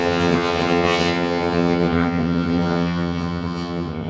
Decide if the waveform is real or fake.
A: fake